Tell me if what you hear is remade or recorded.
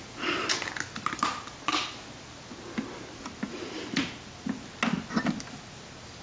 recorded